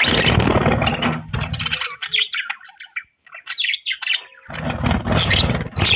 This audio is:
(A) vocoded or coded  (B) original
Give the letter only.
B